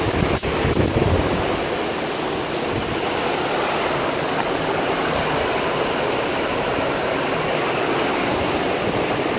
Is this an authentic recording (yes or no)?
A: yes